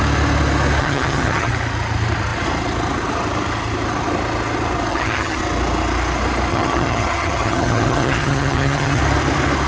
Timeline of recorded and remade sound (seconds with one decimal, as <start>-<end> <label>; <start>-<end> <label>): 0.0-0.8 recorded; 0.8-1.5 remade; 1.5-4.9 recorded; 4.9-5.4 remade; 5.4-6.5 recorded; 6.5-9.0 remade; 9.0-9.7 recorded